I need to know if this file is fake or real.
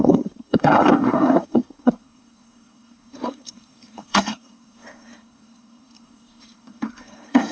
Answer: fake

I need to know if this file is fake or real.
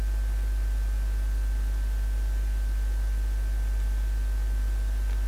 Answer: real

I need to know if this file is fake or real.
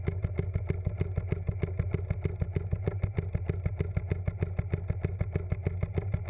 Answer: real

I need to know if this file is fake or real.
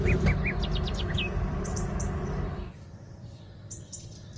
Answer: real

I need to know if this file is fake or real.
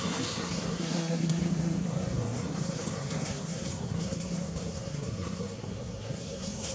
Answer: fake